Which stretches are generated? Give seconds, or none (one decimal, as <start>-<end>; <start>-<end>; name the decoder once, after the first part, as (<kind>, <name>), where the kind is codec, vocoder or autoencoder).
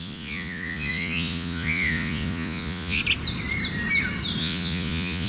0.0-3.0 (vocoder, Vocos); 4.4-5.3